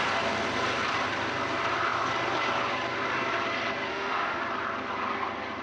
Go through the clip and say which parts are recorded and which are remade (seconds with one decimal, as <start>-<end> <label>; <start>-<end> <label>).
0.0-3.9 recorded; 3.9-4.4 remade; 4.4-5.6 recorded